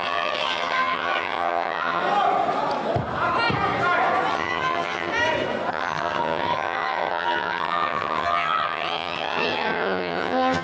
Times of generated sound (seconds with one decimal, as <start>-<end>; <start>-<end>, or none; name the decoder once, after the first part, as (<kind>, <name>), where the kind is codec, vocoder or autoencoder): 0.0-2.0 (vocoder, HiFi-GAN); 4.3-5.1; 5.7-10.6